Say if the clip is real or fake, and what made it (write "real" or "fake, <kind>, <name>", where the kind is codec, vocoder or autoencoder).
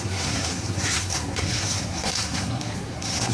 fake, codec, SNAC